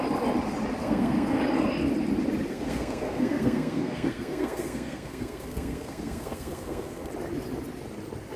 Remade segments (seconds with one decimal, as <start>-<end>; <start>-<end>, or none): 0.8-1.4; 2.5-7.1